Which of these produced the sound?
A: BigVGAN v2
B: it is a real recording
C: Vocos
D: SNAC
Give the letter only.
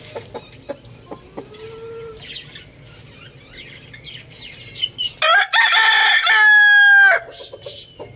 B